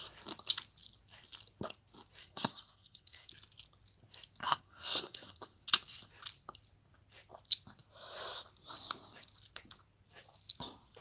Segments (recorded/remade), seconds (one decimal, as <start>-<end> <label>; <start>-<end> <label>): 0.0-2.2 recorded; 2.2-3.3 remade; 3.3-4.4 recorded; 4.4-5.6 remade; 5.6-11.0 recorded